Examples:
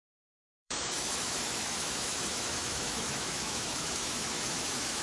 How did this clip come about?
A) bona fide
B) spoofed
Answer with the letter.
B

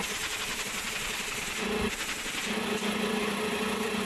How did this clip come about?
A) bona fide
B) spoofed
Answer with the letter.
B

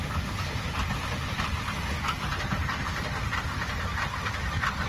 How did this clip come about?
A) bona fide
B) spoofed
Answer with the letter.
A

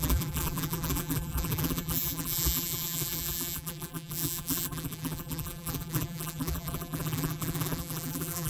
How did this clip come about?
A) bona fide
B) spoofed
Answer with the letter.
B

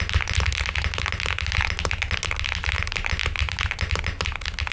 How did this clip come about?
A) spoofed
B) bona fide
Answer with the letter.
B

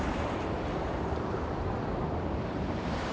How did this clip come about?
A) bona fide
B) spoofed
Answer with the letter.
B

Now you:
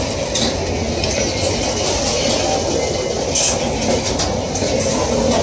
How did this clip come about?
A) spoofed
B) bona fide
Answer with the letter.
B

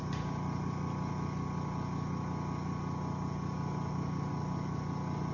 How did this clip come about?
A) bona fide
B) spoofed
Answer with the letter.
A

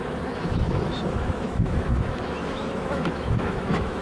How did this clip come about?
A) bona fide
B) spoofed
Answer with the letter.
B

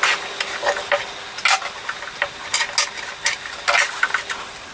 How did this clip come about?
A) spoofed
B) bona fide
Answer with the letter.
B